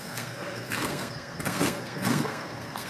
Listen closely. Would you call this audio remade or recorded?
remade